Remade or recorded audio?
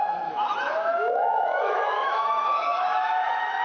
remade